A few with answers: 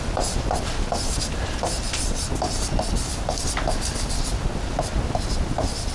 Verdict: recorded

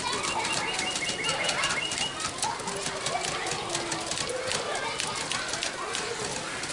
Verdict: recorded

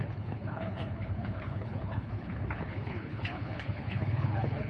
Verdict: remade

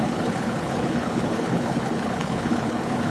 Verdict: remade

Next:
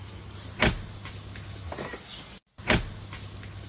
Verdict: recorded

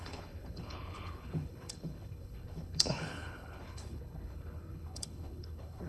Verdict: remade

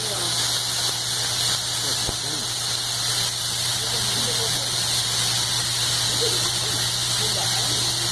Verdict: recorded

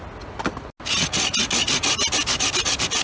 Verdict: recorded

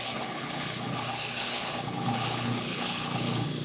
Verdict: remade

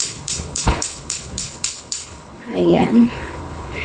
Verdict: remade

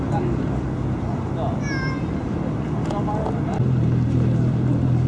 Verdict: recorded